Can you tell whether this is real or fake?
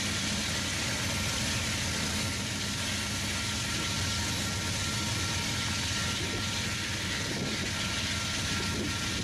real